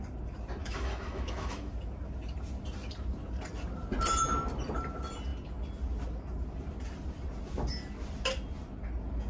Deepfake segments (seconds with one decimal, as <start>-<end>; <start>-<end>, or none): 0.6-1.7